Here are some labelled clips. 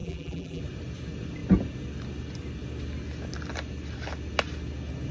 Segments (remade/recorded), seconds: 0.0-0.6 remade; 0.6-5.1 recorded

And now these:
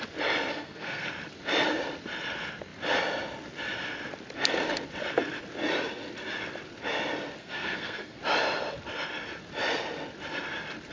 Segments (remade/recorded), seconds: 0.0-0.5 recorded; 0.5-1.1 remade; 1.1-7.4 recorded; 7.4-8.2 remade; 8.2-10.9 recorded

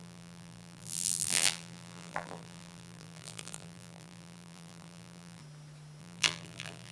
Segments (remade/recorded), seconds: 0.0-5.4 remade; 5.4-6.0 recorded; 6.0-6.9 remade

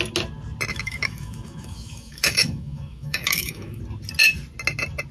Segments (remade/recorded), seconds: 0.0-0.7 recorded; 0.7-3.8 remade; 3.8-5.1 recorded

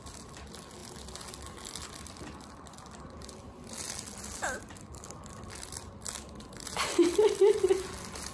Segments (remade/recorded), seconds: 0.0-8.3 recorded